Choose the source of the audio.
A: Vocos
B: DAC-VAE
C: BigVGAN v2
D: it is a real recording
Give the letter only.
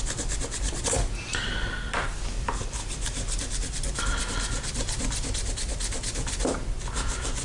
C